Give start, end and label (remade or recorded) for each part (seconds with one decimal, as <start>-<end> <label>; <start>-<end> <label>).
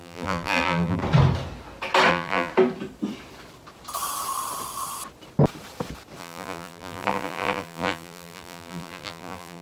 0.0-1.0 remade; 1.0-2.1 recorded; 2.1-2.5 remade; 2.5-6.2 recorded; 6.2-9.6 remade